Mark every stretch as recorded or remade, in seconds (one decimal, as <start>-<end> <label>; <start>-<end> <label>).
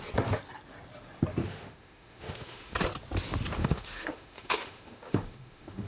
0.0-1.4 recorded; 1.4-2.7 remade; 2.7-3.6 recorded; 3.6-5.9 remade